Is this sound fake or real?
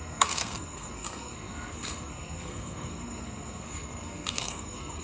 fake